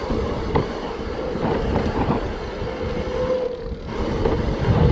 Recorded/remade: recorded